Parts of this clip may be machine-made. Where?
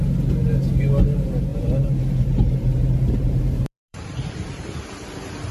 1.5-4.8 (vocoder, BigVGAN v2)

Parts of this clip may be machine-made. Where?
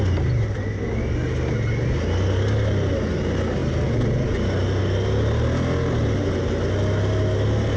none